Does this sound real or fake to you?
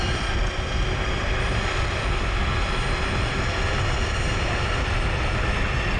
real